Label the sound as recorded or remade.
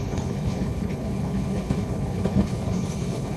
remade